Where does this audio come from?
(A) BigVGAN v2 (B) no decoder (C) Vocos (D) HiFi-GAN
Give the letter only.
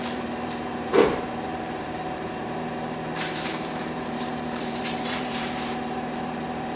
A